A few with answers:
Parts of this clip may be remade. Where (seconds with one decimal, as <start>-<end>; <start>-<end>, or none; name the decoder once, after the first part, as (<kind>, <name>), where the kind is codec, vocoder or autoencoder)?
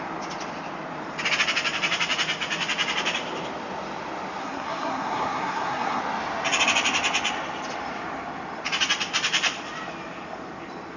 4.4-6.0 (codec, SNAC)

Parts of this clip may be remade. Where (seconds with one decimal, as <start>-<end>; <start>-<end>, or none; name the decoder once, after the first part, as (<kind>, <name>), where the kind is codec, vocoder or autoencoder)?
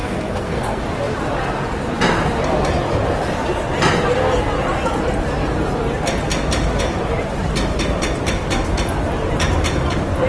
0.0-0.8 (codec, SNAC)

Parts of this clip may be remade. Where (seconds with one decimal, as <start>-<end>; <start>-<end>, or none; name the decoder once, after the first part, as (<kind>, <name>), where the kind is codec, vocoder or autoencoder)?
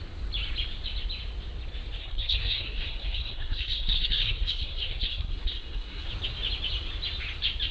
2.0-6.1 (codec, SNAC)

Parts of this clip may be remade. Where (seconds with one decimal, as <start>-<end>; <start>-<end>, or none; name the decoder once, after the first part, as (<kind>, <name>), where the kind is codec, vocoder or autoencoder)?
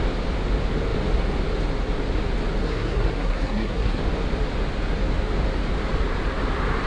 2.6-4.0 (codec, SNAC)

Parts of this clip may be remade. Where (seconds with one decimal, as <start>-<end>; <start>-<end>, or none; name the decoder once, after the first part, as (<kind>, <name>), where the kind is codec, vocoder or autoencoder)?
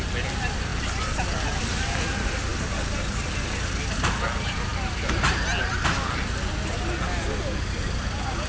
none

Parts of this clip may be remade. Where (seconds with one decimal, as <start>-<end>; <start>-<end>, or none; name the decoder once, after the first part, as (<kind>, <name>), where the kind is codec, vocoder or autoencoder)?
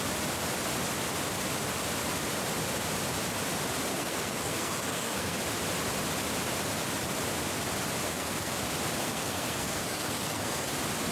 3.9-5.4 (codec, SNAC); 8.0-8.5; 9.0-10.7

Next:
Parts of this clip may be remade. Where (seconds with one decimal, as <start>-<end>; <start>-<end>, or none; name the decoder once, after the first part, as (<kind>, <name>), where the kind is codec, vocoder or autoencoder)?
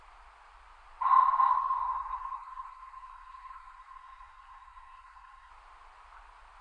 1.5-5.5 (codec, SNAC)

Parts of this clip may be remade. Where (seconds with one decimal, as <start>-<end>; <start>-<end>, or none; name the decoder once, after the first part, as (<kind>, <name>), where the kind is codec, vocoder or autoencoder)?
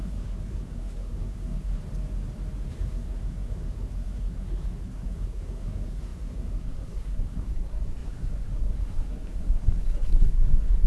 0.0-1.8 (codec, SNAC); 2.7-10.9